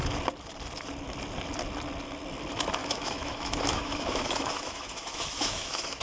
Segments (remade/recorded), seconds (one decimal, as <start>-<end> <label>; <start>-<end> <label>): 0.0-2.8 recorded; 2.8-6.0 remade